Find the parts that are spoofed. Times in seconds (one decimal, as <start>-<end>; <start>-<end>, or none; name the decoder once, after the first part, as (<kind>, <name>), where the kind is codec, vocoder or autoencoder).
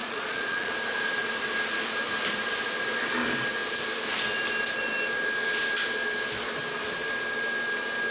0.0-0.7 (vocoder, Vocos)